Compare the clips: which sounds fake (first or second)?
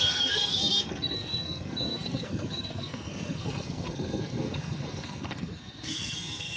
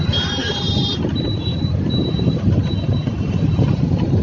first